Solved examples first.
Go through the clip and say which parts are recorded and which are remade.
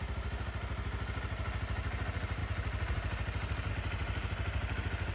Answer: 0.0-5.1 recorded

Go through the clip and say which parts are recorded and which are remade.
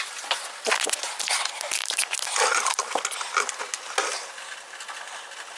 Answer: 0.0-5.6 recorded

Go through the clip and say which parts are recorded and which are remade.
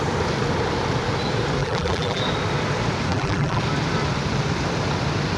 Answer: 0.0-1.6 recorded; 1.6-2.2 remade; 2.2-3.1 recorded; 3.1-3.6 remade; 3.6-5.4 recorded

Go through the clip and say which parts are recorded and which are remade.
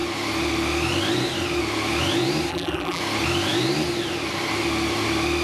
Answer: 0.0-2.5 recorded; 2.5-3.0 remade; 3.0-5.4 recorded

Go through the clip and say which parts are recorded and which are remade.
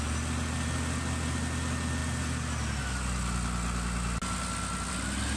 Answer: 0.0-5.4 recorded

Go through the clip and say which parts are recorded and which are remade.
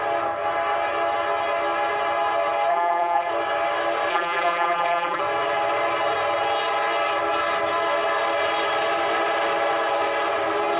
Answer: 0.0-2.7 recorded; 2.7-3.3 remade; 3.3-4.1 recorded; 4.1-5.2 remade; 5.2-10.8 recorded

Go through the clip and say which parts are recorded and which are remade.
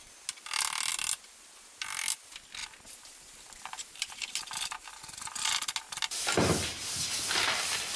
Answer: 0.0-2.6 recorded; 2.6-4.9 remade; 4.9-8.0 recorded